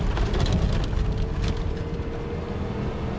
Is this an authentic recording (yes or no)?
yes